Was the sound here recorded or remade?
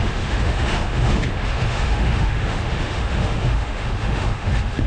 remade